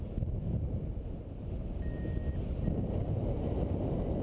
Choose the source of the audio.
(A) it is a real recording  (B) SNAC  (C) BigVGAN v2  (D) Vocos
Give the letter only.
A